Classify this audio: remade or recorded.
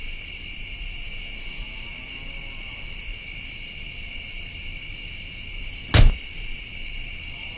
recorded